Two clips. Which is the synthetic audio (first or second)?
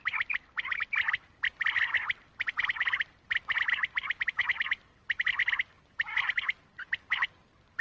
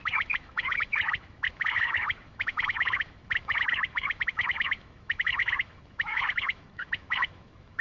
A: second